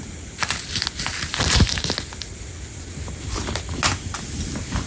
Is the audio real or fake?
real